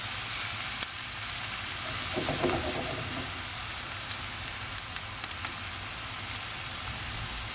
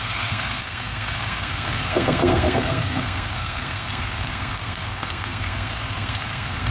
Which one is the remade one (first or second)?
second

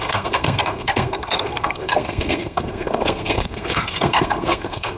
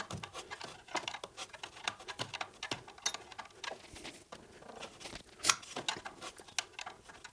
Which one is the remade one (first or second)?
first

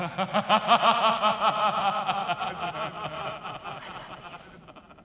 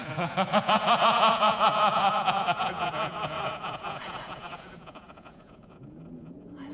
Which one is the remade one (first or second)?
second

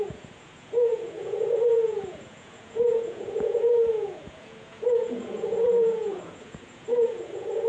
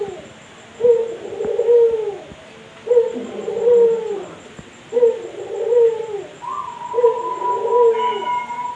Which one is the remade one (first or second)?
first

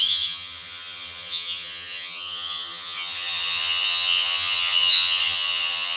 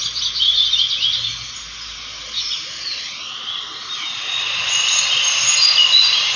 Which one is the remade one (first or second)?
first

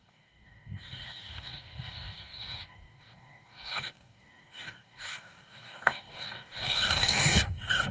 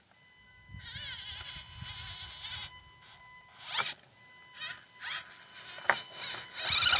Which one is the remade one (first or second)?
first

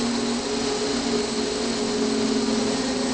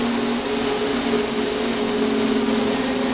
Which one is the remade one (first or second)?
second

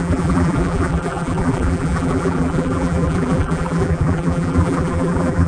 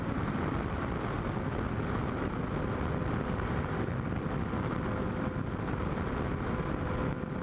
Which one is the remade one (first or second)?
first